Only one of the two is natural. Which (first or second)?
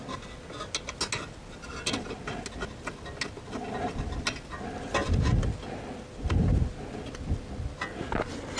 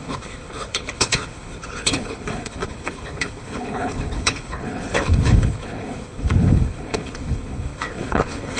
first